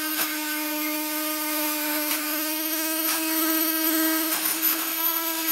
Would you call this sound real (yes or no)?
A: no